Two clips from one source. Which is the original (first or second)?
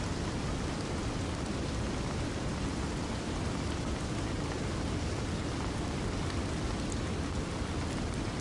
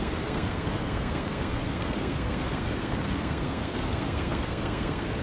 first